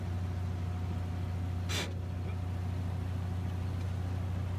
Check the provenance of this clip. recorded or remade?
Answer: recorded